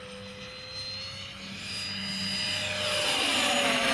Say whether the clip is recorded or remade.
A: recorded